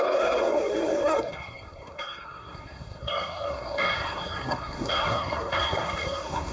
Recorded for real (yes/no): no